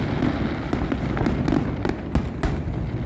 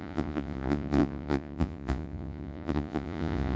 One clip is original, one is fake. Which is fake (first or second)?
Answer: second